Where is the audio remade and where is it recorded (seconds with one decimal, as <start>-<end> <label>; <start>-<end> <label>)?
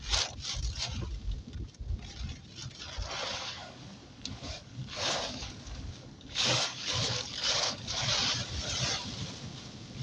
0.0-3.3 recorded; 3.3-8.1 remade; 8.1-10.0 recorded